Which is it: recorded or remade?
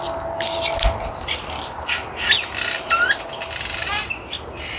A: recorded